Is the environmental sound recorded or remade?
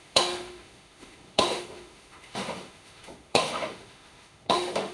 remade